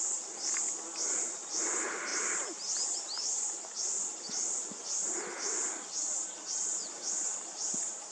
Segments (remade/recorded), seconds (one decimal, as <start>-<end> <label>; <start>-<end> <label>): 0.0-8.1 recorded